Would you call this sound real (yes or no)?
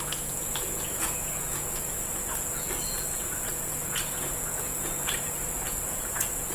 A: no